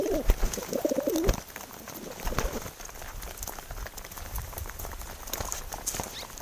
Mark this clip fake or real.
real